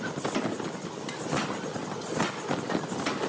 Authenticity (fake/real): real